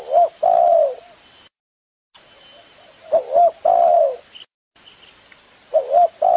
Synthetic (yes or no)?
no